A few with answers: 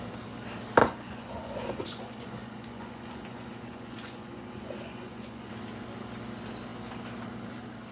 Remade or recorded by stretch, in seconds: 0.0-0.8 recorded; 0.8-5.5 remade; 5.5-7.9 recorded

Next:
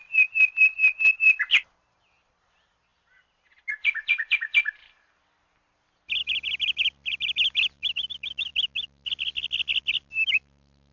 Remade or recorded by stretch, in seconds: 0.0-1.6 recorded; 1.6-8.5 remade; 8.5-9.8 recorded; 9.8-10.9 remade

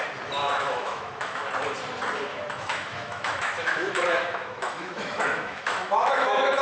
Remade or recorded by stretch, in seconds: 0.0-0.4 recorded; 0.4-1.5 remade; 1.5-2.3 recorded; 2.3-6.6 remade

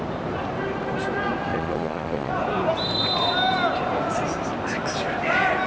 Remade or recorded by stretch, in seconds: 0.0-1.5 recorded; 1.5-2.3 remade; 2.3-5.7 recorded

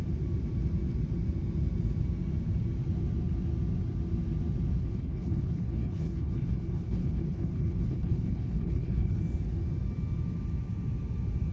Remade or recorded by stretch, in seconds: 0.0-4.8 recorded; 4.8-9.2 remade; 9.2-11.5 recorded

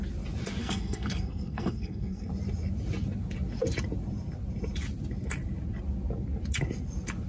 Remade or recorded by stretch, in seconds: 0.0-0.6 recorded; 0.6-2.3 remade; 2.3-7.3 recorded

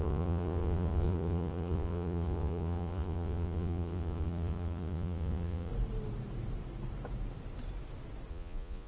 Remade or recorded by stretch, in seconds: 0.0-5.7 remade; 5.7-8.3 recorded; 8.3-8.9 remade

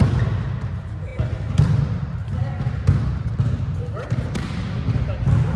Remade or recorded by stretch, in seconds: 0.0-5.6 recorded